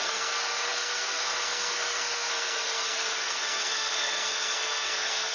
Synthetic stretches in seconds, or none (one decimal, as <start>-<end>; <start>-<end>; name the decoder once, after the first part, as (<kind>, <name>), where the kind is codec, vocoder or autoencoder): 0.0-5.3 (codec, SNAC)